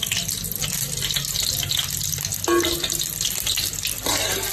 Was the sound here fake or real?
real